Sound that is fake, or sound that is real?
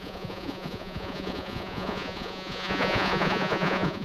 fake